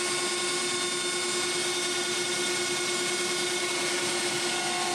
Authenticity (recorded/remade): recorded